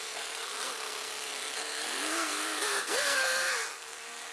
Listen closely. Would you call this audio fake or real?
fake